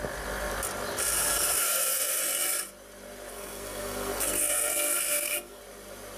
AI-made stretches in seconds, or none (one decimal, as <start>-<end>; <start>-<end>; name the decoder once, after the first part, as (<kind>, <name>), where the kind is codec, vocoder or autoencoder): 1.3-2.2 (codec, SNAC); 3.3-5.6